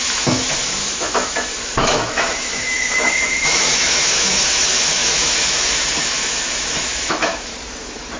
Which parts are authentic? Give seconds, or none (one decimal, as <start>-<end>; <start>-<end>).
7.5-8.2